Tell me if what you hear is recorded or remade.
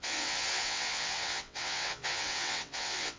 remade